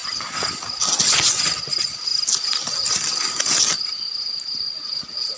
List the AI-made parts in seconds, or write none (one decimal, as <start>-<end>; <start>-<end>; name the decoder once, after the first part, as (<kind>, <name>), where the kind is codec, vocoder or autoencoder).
none